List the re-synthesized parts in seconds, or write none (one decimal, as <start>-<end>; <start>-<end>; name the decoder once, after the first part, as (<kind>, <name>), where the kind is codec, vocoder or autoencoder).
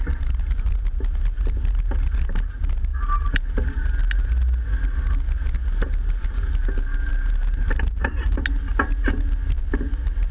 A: none